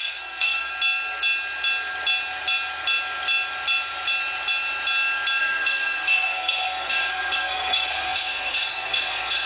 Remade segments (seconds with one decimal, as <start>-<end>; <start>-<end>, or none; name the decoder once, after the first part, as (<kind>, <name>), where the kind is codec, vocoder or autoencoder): 0.0-0.7 (codec, SNAC); 5.4-9.5